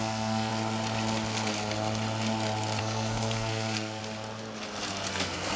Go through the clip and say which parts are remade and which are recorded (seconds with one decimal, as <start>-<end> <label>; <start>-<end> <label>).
0.0-0.5 remade; 0.5-2.8 recorded; 2.8-4.0 remade; 4.0-5.1 recorded; 5.1-5.6 remade